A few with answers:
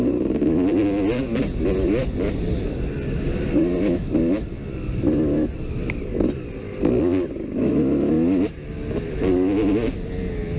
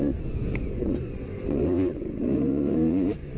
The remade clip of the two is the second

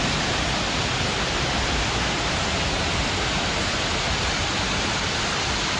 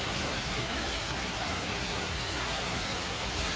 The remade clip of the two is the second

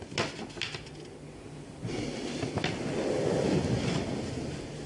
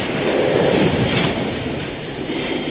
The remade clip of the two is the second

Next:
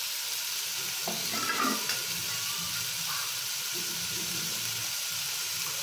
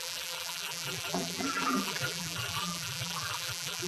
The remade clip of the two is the second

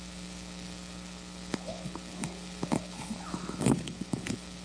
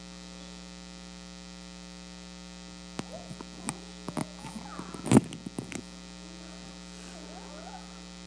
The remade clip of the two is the first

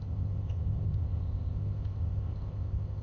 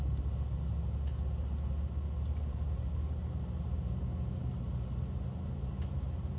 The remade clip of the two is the first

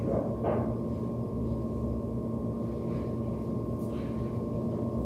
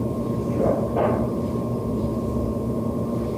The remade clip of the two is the second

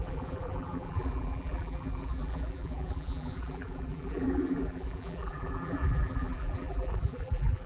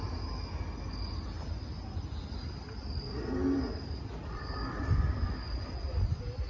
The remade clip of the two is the first